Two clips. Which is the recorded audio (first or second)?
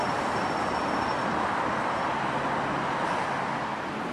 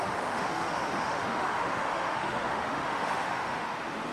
first